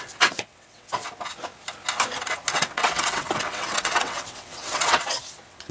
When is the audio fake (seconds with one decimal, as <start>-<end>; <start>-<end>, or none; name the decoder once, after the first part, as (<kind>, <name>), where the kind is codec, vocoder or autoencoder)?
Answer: 0.0-1.0 (vocoder, WaveNeXt); 2.5-5.7